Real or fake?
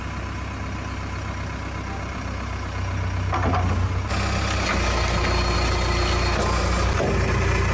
real